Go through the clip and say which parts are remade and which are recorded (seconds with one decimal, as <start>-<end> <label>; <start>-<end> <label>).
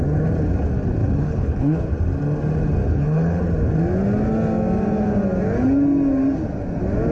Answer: 0.0-1.0 recorded; 1.0-1.9 remade; 1.9-2.8 recorded; 2.8-3.4 remade; 3.4-7.1 recorded